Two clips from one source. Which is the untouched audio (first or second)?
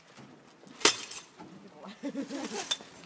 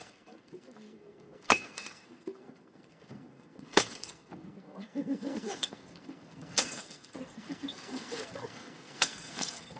first